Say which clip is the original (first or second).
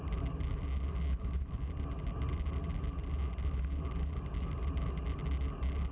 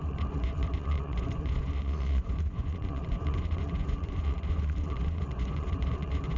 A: first